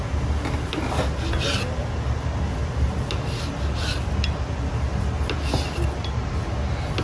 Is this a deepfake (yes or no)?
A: no